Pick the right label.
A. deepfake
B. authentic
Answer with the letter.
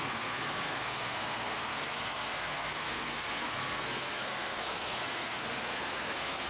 A